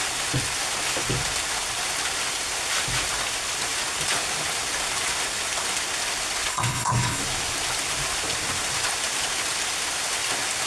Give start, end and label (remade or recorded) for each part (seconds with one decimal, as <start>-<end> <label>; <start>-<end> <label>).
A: 0.0-6.5 recorded; 6.5-7.2 remade; 7.2-10.7 recorded